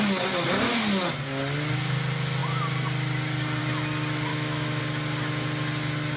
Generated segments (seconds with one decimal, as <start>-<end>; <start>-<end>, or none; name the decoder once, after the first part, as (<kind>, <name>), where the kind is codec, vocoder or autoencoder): 4.3-4.8 (autoencoder, DAC-VAE)